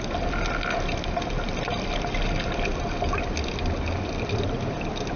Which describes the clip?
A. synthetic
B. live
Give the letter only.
B